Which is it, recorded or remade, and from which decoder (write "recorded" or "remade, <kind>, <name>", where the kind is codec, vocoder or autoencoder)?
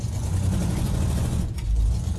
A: remade, vocoder, Vocos